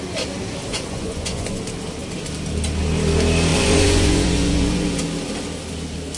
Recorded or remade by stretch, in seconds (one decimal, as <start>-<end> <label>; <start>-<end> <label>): 0.0-0.7 recorded; 0.7-1.6 remade; 1.6-3.5 recorded; 3.5-5.0 remade; 5.0-6.2 recorded